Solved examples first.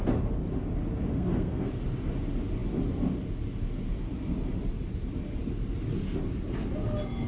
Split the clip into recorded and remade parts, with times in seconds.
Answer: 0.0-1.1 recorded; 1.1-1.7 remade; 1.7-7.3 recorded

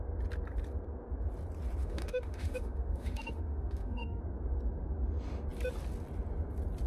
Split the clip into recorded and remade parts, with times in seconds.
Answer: 0.0-1.8 recorded; 1.8-4.2 remade; 4.2-6.9 recorded

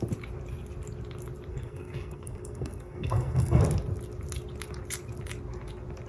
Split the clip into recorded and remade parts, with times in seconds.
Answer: 0.0-1.5 recorded; 1.5-3.6 remade; 3.6-6.1 recorded

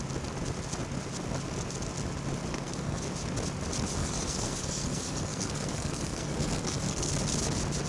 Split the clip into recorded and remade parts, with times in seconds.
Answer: 0.0-2.5 recorded; 2.5-3.1 remade; 3.1-4.0 recorded; 4.0-7.1 remade; 7.1-7.9 recorded

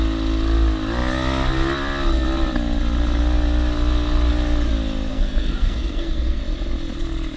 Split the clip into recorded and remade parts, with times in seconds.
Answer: 0.0-5.1 recorded; 5.1-6.4 remade; 6.4-7.4 recorded

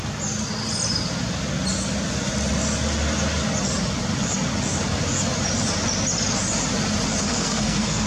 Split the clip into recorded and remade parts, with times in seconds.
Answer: 0.0-7.2 recorded; 7.2-8.1 remade

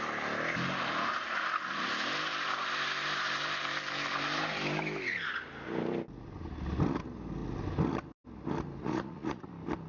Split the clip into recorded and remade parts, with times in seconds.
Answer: 0.0-8.8 recorded; 8.8-9.5 remade; 9.5-9.9 recorded

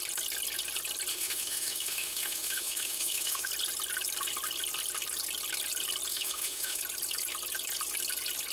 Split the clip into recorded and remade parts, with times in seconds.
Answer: 0.0-1.1 recorded; 1.1-3.5 remade; 3.5-6.1 recorded; 6.1-6.8 remade; 6.8-8.5 recorded